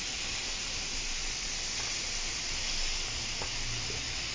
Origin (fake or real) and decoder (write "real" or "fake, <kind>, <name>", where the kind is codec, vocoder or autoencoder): real